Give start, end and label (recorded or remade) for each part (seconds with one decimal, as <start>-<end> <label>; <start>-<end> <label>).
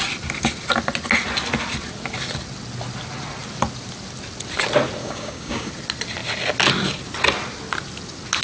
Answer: 0.0-5.0 recorded; 5.0-5.7 remade; 5.7-8.4 recorded